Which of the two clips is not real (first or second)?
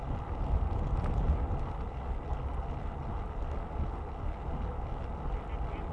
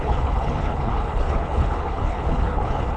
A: second